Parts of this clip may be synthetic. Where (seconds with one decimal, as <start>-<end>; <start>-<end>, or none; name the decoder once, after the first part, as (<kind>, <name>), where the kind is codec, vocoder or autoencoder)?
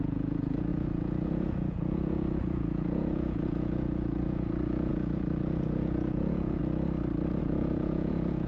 0.0-6.6 (vocoder, Vocos); 7.4-8.5